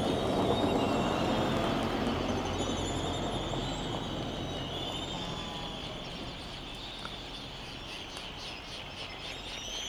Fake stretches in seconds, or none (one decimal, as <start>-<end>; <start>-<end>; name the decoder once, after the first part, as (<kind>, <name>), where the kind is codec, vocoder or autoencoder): none